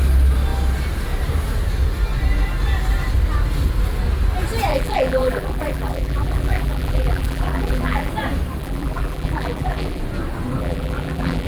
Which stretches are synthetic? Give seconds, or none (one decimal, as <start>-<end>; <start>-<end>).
4.7-8.1; 8.6-10.0; 10.6-11.5